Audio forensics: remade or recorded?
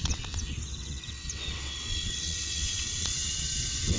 remade